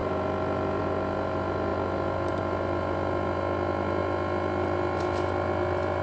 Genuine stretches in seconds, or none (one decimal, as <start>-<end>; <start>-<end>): 0.0-6.0